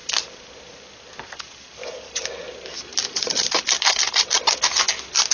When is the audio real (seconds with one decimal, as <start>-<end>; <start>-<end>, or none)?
0.0-5.3